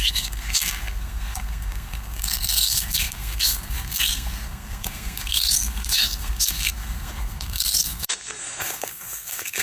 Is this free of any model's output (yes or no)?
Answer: no